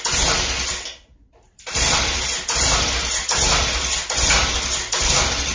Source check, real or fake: real